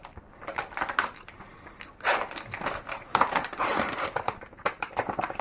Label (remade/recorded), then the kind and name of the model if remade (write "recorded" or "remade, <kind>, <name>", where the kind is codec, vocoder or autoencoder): remade, vocoder, BigVGAN v2